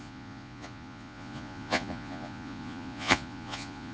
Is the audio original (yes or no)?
no